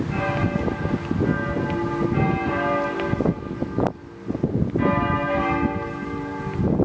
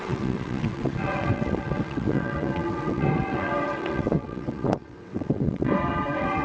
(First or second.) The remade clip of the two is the second